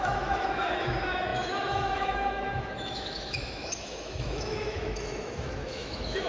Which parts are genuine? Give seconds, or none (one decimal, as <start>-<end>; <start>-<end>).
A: none